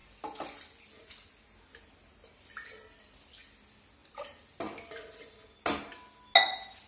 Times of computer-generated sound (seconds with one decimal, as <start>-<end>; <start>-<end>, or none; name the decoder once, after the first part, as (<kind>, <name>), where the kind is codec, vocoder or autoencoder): none